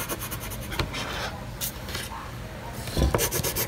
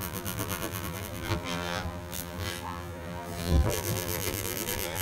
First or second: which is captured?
first